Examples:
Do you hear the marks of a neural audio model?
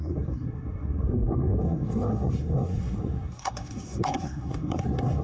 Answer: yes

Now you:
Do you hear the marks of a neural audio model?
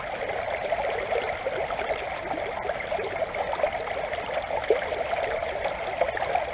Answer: no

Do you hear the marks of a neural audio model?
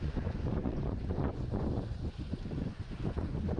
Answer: yes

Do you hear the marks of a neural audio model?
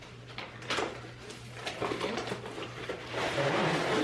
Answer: no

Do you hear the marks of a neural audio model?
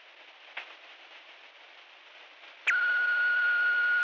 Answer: no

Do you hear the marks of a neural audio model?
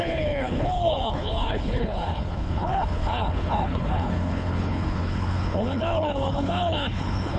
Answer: yes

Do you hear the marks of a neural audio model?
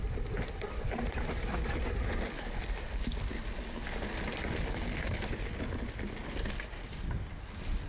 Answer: no